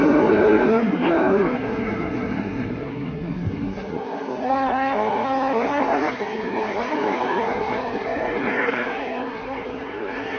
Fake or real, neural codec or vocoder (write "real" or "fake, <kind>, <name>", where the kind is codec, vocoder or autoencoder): fake, codec, SNAC